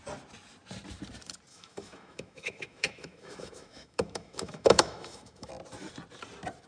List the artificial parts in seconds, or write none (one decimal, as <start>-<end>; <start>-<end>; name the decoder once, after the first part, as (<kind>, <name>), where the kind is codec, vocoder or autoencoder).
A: 1.5-5.5 (autoencoder, DAC-VAE)